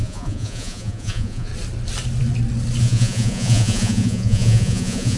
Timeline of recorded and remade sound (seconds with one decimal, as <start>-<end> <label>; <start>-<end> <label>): 0.0-1.5 remade; 1.5-2.8 recorded; 2.8-5.2 remade